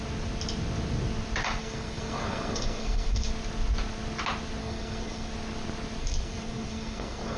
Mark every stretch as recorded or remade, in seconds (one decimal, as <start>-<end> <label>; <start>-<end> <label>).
0.0-1.6 recorded; 1.6-3.3 remade; 3.3-4.6 recorded; 4.6-5.3 remade; 5.3-6.0 recorded; 6.0-7.4 remade